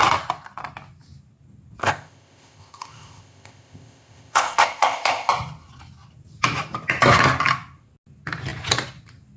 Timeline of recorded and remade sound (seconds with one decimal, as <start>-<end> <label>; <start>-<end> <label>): 0.0-1.8 recorded; 1.8-5.3 remade; 5.3-9.4 recorded